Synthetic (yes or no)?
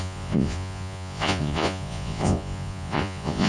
yes